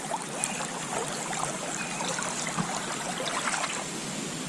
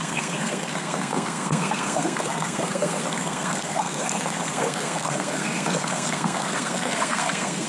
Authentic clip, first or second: first